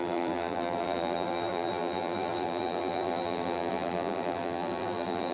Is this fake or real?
fake